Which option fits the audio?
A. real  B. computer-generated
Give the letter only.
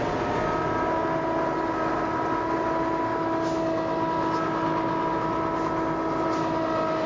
A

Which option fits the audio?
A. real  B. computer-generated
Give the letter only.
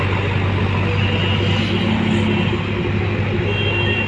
A